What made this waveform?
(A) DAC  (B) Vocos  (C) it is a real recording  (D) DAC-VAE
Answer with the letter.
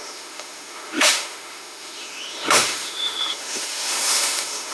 D